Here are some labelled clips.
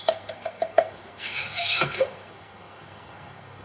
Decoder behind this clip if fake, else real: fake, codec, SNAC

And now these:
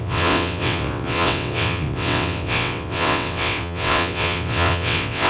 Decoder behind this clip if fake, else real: fake, vocoder, WaveNeXt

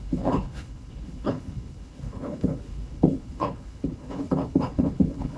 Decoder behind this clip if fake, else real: fake, codec, HILCodec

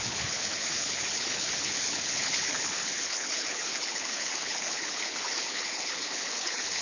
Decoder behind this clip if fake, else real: fake, codec, HILCodec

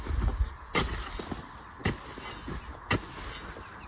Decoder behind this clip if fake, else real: real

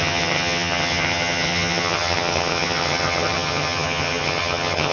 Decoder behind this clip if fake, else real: fake, vocoder, HiFi-GAN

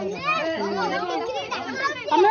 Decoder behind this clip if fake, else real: real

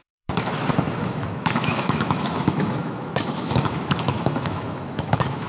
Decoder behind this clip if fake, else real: fake, autoencoder, DAC-VAE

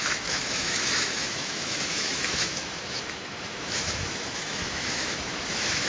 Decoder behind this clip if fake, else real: fake, autoencoder, DAC-VAE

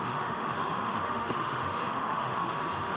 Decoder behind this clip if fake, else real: fake, autoencoder, DAC-VAE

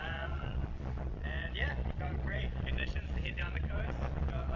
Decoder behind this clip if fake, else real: fake, vocoder, Vocos